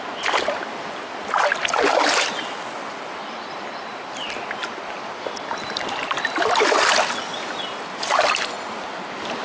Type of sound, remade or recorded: recorded